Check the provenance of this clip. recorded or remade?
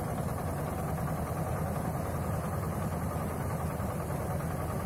recorded